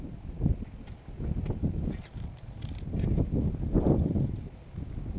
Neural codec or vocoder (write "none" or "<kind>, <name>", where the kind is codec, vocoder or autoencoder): none